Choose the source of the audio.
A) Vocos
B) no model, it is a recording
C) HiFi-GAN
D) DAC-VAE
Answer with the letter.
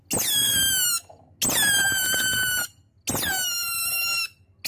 B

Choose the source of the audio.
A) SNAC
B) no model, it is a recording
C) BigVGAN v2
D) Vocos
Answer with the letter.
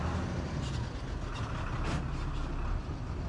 B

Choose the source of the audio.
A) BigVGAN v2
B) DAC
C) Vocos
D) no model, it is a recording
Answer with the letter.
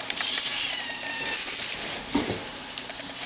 A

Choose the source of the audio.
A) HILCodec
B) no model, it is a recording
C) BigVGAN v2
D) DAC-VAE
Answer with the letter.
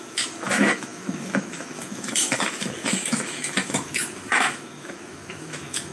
D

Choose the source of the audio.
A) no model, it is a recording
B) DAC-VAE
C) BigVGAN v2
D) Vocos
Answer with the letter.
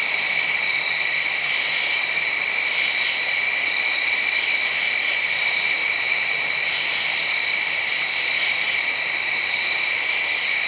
C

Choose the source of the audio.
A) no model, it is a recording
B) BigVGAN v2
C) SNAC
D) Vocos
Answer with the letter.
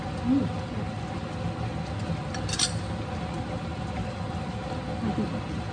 A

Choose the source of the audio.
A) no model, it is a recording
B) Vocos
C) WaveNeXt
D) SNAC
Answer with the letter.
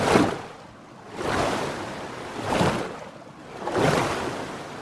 A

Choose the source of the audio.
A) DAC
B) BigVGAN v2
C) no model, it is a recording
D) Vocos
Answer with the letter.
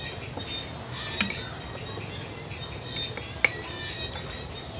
C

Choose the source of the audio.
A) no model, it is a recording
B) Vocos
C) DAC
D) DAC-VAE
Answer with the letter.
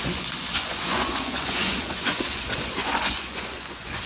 B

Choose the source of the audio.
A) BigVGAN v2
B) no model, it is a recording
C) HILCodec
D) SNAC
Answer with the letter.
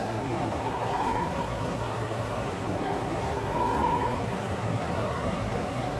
D